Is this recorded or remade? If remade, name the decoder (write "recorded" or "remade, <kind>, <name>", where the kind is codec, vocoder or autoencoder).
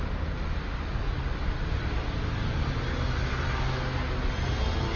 recorded